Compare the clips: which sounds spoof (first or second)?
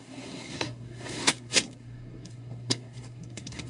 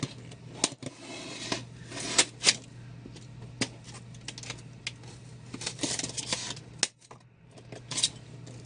first